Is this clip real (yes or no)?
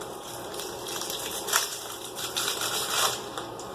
no